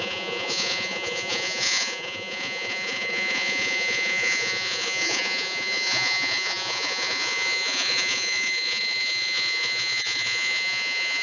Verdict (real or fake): fake